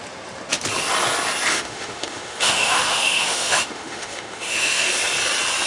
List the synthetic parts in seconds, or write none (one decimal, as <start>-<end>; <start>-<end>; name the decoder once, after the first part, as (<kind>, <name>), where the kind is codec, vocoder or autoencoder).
1.5-4.9 (autoencoder, DAC-VAE)